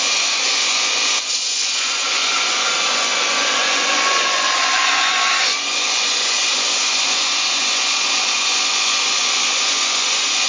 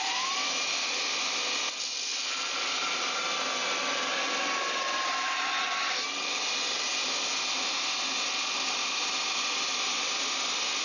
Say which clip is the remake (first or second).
first